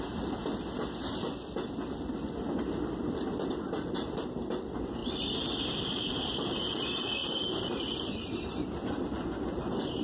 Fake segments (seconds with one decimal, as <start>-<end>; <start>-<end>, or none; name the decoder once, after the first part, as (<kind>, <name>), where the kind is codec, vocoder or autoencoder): none